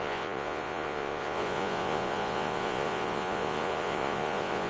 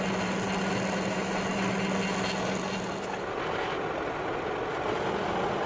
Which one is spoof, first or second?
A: first